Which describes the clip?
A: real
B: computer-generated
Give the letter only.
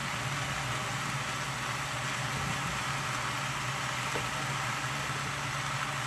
A